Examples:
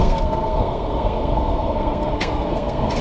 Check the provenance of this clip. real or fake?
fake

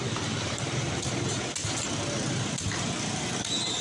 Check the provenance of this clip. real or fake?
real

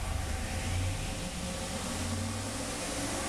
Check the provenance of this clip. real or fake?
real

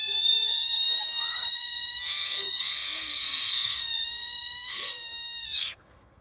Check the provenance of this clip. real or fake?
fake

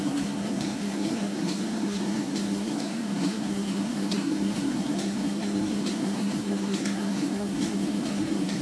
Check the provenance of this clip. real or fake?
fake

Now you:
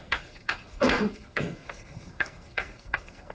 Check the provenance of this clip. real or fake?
fake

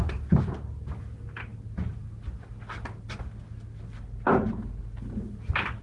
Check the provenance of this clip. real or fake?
real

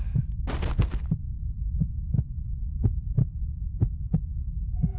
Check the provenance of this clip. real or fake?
real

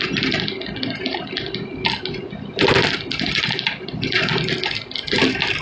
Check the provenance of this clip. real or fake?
real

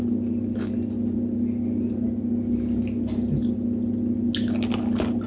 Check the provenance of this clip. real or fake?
real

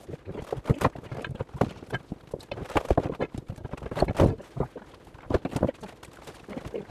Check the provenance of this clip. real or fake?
real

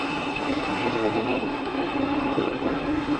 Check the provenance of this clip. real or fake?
fake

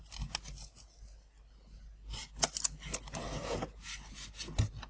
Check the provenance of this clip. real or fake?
real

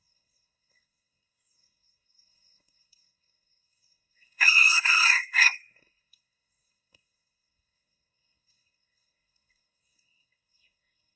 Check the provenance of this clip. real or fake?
fake